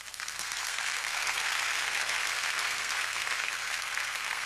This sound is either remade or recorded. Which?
remade